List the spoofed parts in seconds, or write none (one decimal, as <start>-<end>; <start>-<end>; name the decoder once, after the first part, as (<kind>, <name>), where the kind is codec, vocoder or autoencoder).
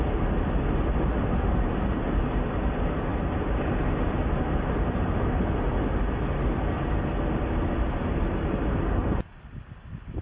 none